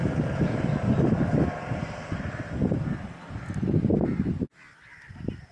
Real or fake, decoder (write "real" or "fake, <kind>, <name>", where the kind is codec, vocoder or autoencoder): real